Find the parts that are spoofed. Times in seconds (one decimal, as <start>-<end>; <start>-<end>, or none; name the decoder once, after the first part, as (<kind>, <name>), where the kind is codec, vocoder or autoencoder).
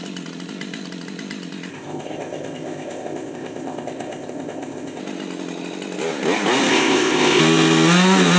1.7-5.0 (codec, ZipCodec); 6.7-7.4